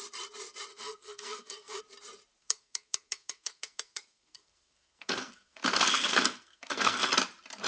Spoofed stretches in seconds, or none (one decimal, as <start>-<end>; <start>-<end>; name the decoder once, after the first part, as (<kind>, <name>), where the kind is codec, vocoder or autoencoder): 0.7-1.8 (codec, SNAC); 2.4-7.0